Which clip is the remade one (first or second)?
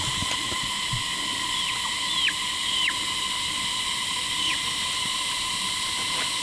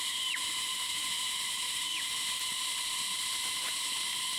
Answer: second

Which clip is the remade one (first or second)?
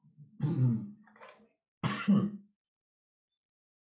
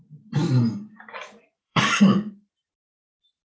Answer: second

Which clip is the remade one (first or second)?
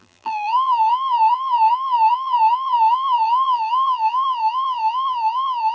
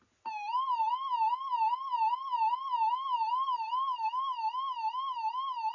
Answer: first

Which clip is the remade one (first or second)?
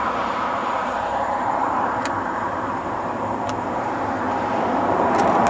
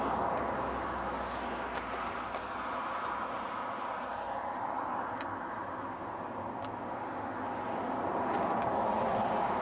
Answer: first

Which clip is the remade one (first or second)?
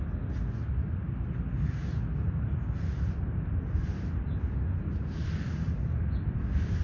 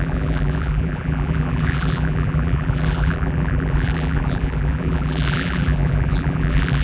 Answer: second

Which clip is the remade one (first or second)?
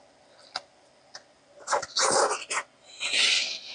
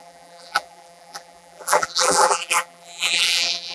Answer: second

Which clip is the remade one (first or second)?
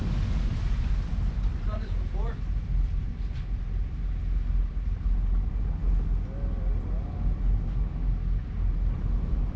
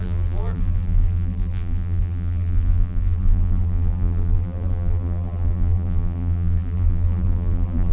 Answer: second